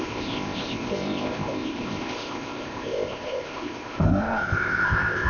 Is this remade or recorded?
remade